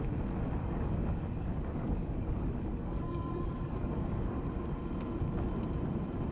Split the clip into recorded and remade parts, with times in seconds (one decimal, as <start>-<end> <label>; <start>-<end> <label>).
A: 0.0-0.6 recorded; 0.6-4.4 remade; 4.4-6.3 recorded